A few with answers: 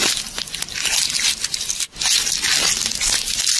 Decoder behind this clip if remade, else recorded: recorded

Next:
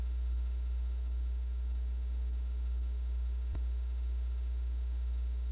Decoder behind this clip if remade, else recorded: remade, autoencoder, DAC-VAE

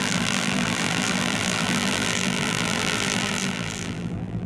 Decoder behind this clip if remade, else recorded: remade, vocoder, BigVGAN v2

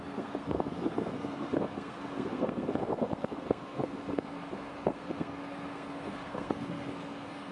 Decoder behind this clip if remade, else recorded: remade, codec, SNAC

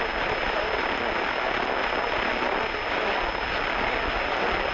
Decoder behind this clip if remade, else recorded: recorded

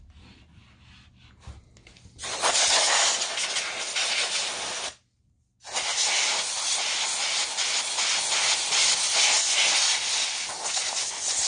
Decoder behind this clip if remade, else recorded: recorded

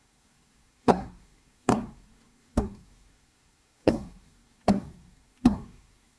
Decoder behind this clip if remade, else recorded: remade, codec, SNAC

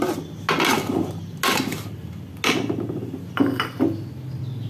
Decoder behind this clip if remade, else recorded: recorded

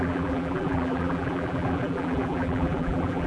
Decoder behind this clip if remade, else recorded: remade, vocoder, BigVGAN v2